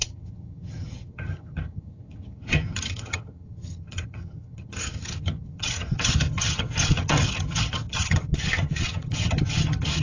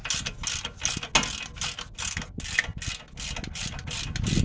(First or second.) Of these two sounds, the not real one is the first